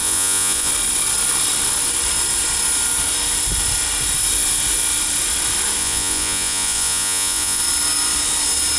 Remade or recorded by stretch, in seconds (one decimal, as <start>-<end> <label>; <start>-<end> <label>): 0.0-0.7 remade; 0.7-5.8 recorded; 5.8-7.6 remade; 7.6-8.8 recorded